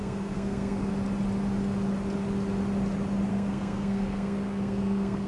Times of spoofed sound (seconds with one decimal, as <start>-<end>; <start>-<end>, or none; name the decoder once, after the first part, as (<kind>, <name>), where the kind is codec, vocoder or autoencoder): 0.0-0.9 (codec, SNAC); 3.3-5.3